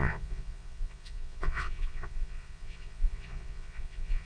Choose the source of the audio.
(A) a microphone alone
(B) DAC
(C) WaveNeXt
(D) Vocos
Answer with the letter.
D